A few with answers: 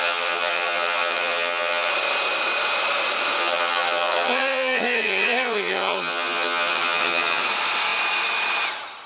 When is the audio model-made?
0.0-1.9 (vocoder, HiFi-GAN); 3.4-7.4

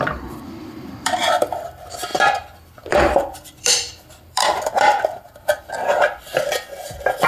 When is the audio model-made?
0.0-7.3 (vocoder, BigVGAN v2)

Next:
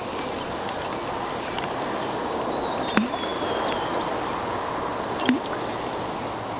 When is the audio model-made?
3.3-4.0 (vocoder, BigVGAN v2)

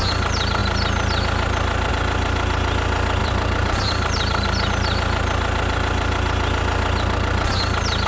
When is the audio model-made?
3.2-4.7 (vocoder, BigVGAN v2)

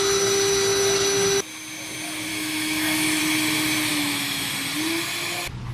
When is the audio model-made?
2.3-3.2 (autoencoder, DAC-VAE); 3.9-4.5

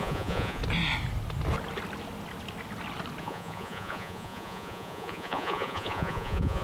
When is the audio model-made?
0.0-0.6 (vocoder, Vocos); 3.2-6.6